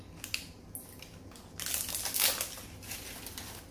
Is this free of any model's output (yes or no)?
yes